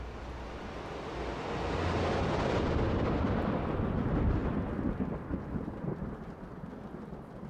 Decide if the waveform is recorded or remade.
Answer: recorded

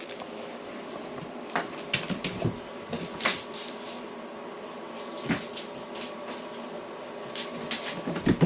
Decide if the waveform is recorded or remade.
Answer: recorded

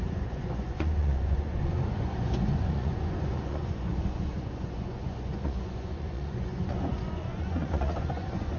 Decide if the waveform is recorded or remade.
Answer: remade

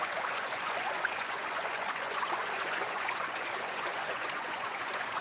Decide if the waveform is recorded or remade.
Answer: remade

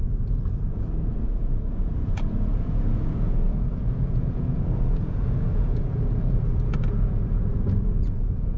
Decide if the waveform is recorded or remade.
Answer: remade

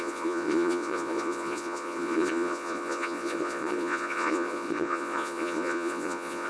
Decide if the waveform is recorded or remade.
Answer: remade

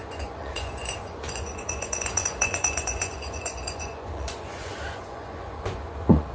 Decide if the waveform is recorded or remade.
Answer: remade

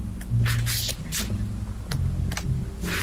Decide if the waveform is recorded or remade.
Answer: recorded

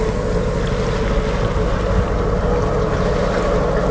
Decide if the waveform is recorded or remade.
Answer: recorded